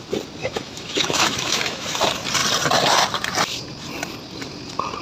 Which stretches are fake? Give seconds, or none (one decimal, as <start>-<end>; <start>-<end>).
0.4-2.0